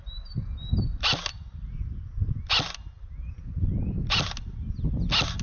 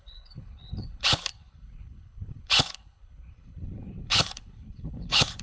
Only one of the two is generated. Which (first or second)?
second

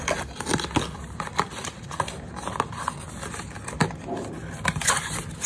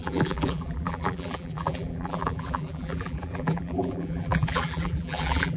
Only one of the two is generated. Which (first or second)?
second